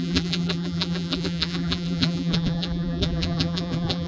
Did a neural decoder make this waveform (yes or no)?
yes